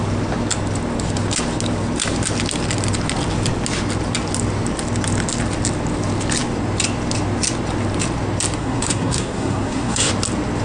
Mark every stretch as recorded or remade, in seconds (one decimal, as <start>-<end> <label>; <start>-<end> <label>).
0.0-8.6 recorded; 8.6-10.1 remade; 10.1-10.6 recorded